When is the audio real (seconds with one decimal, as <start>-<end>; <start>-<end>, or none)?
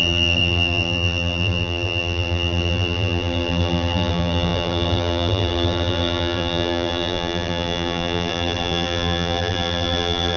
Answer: none